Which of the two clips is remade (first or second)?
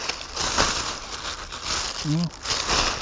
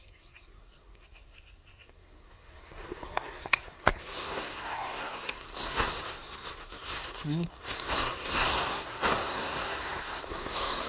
second